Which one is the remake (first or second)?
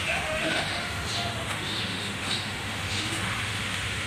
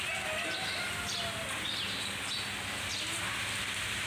first